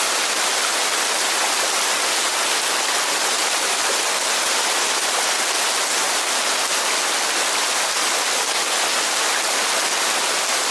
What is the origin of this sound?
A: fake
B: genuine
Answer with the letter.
B